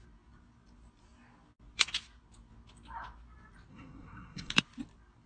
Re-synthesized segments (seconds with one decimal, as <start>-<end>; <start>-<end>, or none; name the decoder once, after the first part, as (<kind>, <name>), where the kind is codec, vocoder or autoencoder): 3.7-4.5 (codec, SNAC)